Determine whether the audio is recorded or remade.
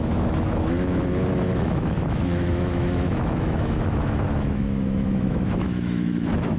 remade